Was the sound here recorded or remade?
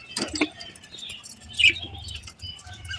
remade